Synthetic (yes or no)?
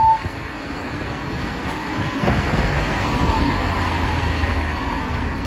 yes